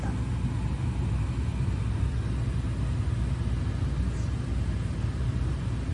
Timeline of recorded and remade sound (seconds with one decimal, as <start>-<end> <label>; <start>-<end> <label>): 0.0-5.9 recorded